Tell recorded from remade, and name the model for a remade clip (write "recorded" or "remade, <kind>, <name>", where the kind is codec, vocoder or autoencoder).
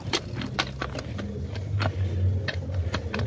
recorded